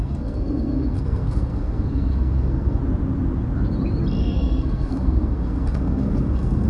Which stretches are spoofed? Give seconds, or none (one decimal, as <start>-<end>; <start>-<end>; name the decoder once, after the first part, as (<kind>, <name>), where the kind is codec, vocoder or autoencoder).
0.0-2.8 (codec, SNAC); 4.2-6.7

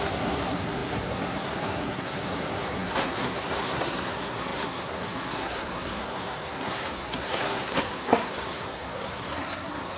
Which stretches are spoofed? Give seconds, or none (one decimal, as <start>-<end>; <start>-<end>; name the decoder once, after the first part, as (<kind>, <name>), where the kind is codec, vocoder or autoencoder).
0.0-10.0 (codec, SNAC)

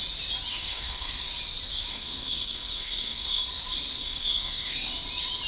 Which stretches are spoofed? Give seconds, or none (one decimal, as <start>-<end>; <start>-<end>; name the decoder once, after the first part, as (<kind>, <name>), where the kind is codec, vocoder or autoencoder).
0.5-1.2 (codec, SNAC); 1.9-3.4; 4.0-4.9

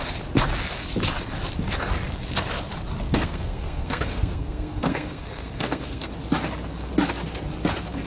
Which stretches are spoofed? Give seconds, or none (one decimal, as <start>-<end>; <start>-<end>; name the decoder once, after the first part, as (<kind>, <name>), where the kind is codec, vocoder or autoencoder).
3.1-6.1 (codec, SNAC)

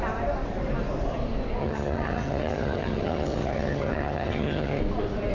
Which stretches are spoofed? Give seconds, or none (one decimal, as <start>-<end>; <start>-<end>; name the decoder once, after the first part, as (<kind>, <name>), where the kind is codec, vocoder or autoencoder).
1.6-4.8 (vocoder, HiFi-GAN)

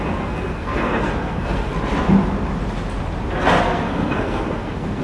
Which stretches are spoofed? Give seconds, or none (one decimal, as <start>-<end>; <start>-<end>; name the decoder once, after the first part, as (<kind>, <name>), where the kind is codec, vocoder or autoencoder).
0.0-1.7 (codec, SNAC); 3.6-5.0